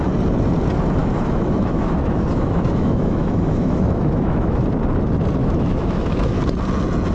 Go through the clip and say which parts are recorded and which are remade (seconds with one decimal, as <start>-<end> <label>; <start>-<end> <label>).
0.0-1.0 recorded; 1.0-4.6 remade; 4.6-5.4 recorded; 5.4-6.4 remade; 6.4-7.1 recorded